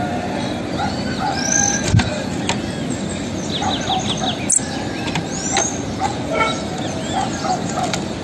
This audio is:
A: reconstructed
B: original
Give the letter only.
B